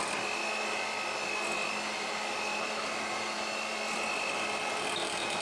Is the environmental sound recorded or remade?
recorded